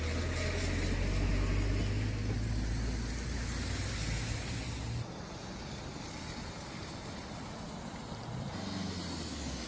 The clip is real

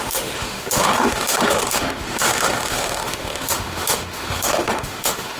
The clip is fake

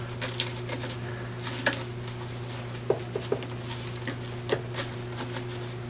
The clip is real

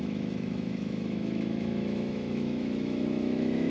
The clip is fake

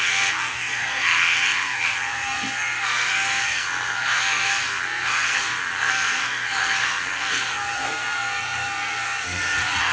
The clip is fake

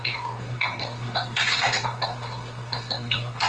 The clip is fake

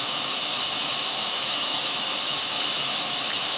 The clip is fake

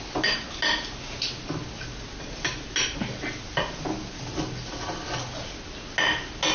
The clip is real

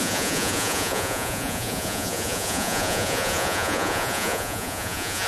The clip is fake